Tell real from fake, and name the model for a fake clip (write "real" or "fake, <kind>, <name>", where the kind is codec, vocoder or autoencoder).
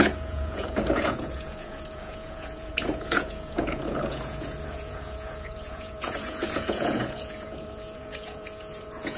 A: fake, vocoder, Vocos